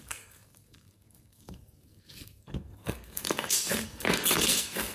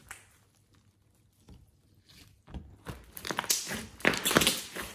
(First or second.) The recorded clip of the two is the second